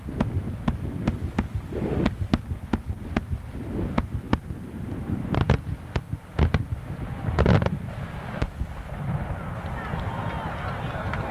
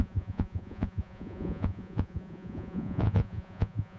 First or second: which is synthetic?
second